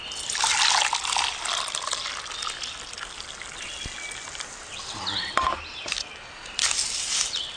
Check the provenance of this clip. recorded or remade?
recorded